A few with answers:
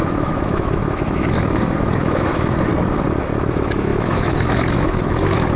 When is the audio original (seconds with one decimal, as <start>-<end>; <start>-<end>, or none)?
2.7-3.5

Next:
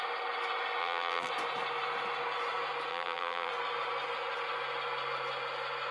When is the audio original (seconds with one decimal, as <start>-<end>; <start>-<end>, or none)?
0.0-0.8; 1.3-2.9; 3.5-5.9

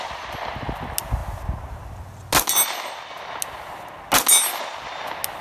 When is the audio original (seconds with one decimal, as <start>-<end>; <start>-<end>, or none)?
0.0-5.4